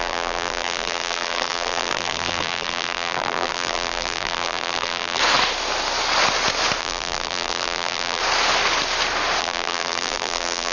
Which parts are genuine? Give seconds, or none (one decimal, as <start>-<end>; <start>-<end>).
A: 5.2-6.8; 8.2-9.4